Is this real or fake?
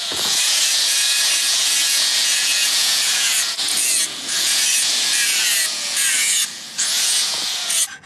fake